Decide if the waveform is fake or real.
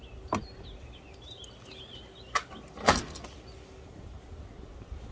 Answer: real